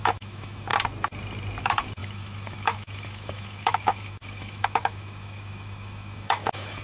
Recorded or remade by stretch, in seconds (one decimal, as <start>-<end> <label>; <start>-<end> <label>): 0.0-0.7 remade; 0.7-1.6 recorded; 1.6-6.8 remade